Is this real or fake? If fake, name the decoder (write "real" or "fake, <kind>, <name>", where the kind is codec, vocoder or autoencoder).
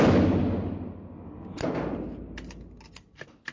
real